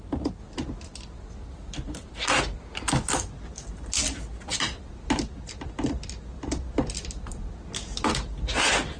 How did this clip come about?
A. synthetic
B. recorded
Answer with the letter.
B